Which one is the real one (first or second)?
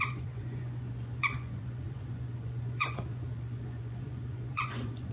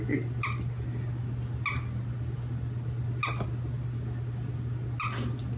second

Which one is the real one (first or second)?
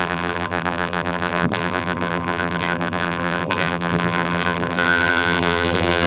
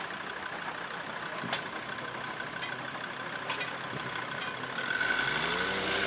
second